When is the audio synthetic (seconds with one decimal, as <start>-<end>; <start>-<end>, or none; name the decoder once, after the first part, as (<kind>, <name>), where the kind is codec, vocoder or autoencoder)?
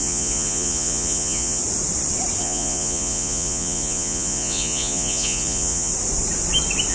0.0-1.6 (vocoder, Vocos); 2.4-5.9